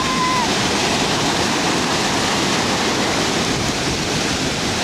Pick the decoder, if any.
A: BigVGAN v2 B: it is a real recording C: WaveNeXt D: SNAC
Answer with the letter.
A